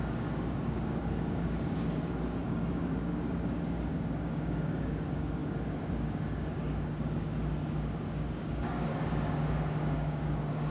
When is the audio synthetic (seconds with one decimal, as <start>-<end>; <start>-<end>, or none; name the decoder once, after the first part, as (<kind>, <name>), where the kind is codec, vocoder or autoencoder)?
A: 0.0-10.7 (codec, DAC)